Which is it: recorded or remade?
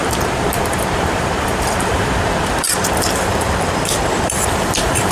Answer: remade